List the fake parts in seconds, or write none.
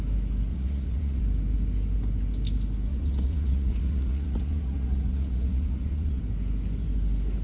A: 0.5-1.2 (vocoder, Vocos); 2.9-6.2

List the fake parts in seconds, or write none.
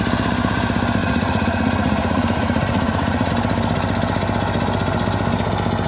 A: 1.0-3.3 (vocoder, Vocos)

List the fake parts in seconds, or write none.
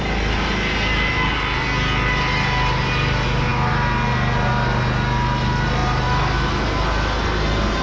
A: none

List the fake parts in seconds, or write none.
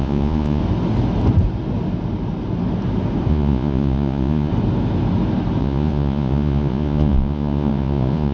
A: 0.0-0.6 (vocoder, Vocos); 3.3-4.5; 5.6-8.3